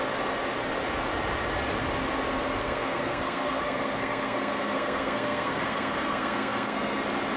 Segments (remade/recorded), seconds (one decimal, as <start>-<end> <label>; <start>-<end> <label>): 0.0-2.6 recorded; 2.6-7.0 remade; 7.0-7.4 recorded